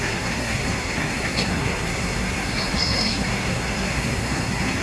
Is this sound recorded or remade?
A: remade